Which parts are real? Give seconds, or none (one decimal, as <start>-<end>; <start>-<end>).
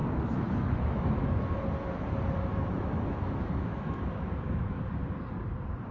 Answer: 1.5-2.5; 4.8-5.9